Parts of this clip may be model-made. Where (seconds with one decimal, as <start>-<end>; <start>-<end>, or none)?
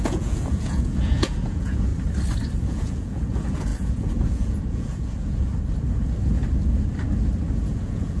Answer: 0.0-1.9; 2.6-5.5; 7.6-8.2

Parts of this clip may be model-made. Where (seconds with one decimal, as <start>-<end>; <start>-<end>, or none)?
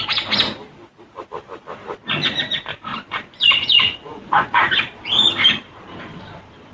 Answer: 2.9-4.7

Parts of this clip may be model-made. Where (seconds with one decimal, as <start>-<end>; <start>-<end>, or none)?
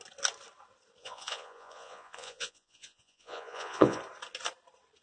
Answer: 1.0-4.0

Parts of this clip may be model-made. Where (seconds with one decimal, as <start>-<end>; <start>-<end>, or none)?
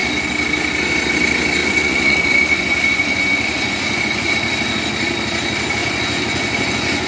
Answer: 1.6-4.3; 5.8-7.1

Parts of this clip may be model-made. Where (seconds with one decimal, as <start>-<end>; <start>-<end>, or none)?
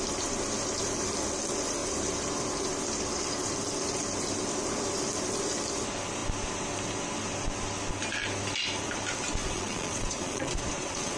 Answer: 9.4-11.2